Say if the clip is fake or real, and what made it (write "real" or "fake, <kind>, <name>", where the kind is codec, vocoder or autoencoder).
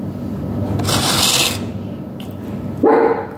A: real